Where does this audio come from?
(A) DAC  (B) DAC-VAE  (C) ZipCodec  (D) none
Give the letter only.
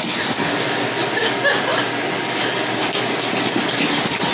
D